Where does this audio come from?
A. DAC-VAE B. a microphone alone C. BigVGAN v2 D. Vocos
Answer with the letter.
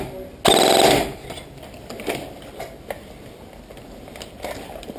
B